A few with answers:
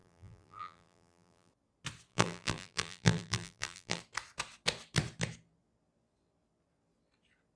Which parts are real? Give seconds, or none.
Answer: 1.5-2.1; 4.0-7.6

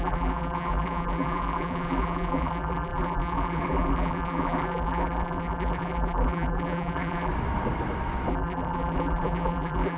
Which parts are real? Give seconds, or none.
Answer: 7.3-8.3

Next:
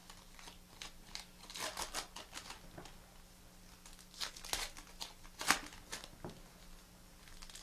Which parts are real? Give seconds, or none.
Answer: 0.0-7.6

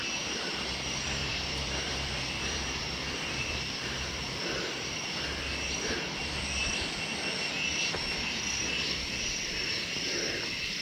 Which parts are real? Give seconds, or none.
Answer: 0.0-1.2; 4.9-10.8

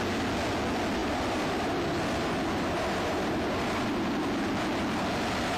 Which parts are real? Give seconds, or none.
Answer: 0.0-1.0; 4.4-5.6

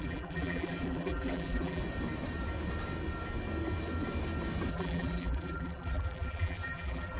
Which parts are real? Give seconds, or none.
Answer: 1.8-4.7